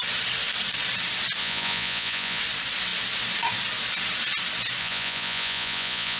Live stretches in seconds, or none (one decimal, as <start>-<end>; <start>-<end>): 0.0-1.4; 2.4-4.8